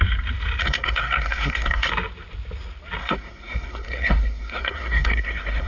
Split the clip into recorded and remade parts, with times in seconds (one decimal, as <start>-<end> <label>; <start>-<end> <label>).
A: 0.0-0.6 recorded; 0.6-1.9 remade; 1.9-3.0 recorded; 3.0-5.7 remade